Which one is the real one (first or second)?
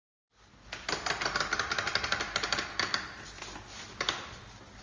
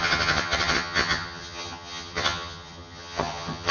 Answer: first